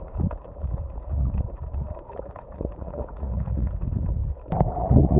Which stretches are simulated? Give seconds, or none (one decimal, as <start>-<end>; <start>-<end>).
0.0-4.2; 4.7-5.2